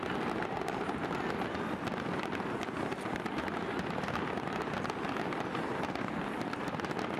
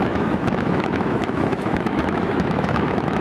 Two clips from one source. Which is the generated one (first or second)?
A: second